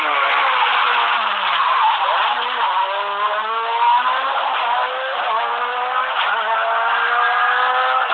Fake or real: real